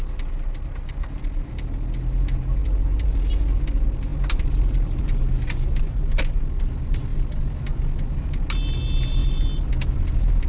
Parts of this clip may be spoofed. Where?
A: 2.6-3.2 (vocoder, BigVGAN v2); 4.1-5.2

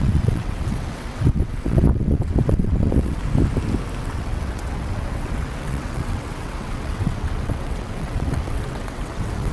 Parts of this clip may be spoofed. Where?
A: 0.0-3.2 (vocoder, WaveNeXt); 4.0-9.5

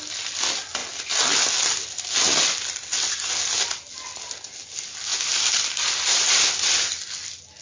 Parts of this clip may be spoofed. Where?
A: none

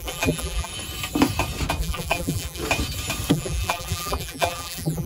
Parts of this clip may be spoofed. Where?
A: 0.0-0.7 (vocoder, BigVGAN v2); 1.8-2.6; 3.3-5.1

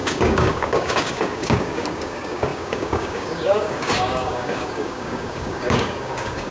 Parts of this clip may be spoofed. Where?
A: 0.0-6.5 (codec, DAC)

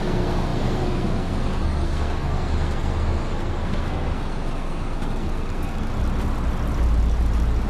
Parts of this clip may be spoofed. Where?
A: 0.0-5.9 (codec, SNAC)

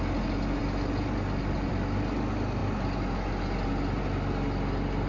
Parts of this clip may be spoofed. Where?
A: none